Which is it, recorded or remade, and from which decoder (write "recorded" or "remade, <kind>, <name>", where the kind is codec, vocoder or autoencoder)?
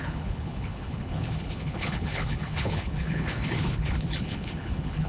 remade, codec, HILCodec